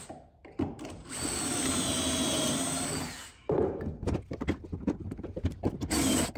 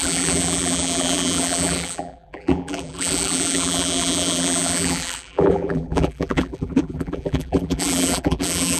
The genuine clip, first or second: first